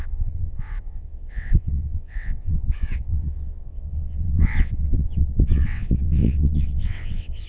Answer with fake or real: fake